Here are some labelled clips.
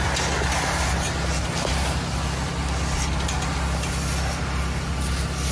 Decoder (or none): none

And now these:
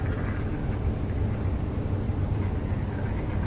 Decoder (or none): none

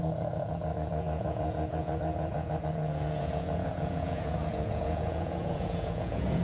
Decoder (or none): vocoder, Vocos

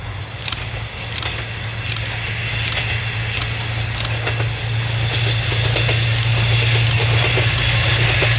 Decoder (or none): none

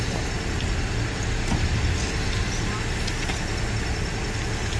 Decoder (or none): none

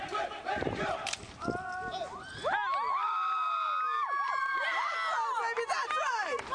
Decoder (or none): none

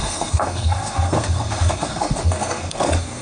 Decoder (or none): codec, SNAC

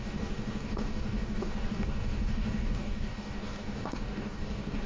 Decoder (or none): codec, DAC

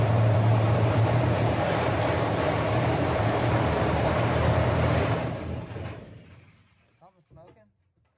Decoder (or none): vocoder, BigVGAN v2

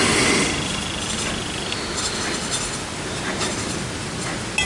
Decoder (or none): none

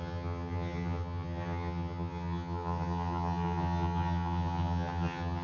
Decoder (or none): vocoder, HiFi-GAN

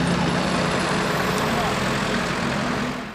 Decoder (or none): none